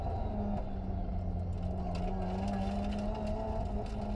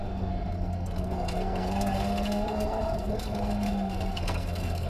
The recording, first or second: first